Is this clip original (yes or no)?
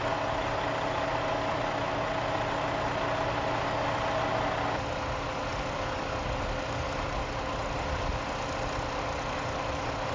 yes